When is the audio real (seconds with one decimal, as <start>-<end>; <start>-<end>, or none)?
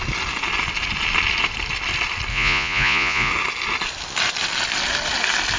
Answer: 0.0-2.3; 3.3-5.6